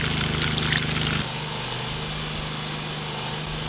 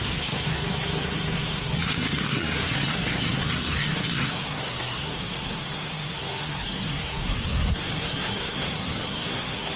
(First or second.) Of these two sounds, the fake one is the second